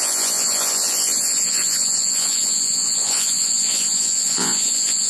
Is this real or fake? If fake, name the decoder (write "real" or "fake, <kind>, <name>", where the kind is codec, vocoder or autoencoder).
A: fake, vocoder, Vocos